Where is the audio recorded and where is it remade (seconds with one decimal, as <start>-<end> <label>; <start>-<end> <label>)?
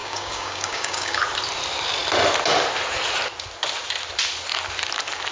0.0-1.2 remade; 1.2-5.3 recorded